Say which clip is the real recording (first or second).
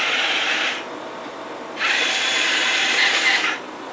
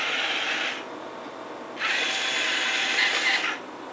second